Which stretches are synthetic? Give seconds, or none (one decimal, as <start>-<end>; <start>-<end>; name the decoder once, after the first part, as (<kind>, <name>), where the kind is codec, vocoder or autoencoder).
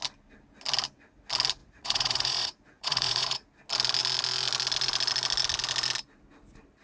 1.6-3.5 (vocoder, Vocos)